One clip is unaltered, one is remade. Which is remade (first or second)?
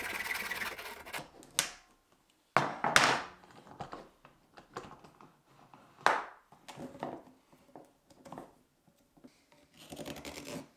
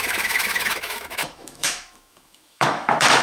second